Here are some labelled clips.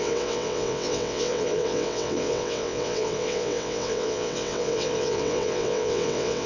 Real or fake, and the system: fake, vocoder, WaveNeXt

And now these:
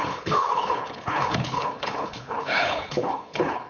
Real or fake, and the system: fake, codec, HILCodec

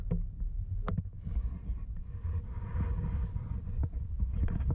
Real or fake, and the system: real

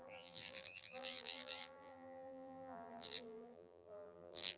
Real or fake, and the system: fake, vocoder, BigVGAN v2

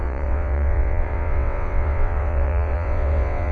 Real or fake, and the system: fake, vocoder, WaveNeXt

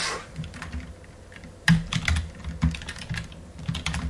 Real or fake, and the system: real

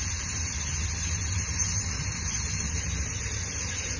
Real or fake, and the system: real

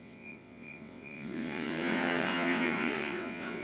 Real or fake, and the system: fake, vocoder, WaveNeXt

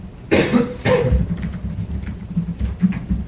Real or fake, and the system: real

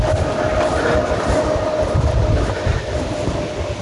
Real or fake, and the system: real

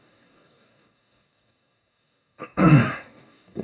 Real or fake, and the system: fake, codec, DAC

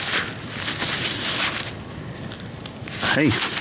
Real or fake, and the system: real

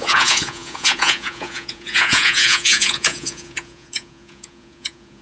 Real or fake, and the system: fake, vocoder, Vocos